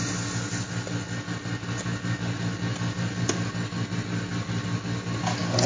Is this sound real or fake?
real